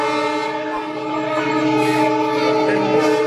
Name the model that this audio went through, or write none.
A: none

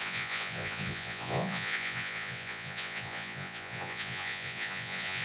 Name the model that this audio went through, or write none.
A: vocoder, Vocos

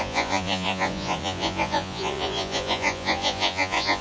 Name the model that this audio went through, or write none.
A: vocoder, Vocos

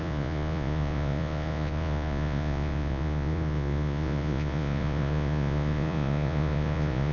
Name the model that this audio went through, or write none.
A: vocoder, Vocos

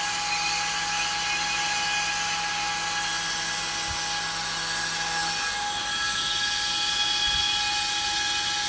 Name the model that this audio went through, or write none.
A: none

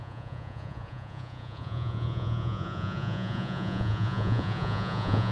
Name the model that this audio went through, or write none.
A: vocoder, Vocos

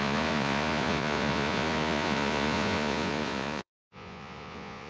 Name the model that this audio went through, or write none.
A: vocoder, Vocos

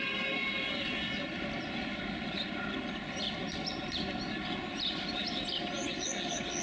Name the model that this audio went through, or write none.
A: none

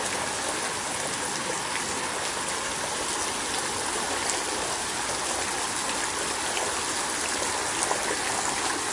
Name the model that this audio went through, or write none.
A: none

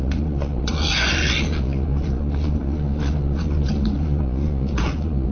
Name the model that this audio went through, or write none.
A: vocoder, Vocos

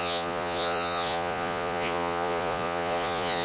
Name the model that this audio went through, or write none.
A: vocoder, Vocos